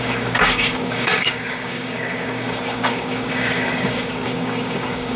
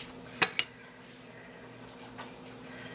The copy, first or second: first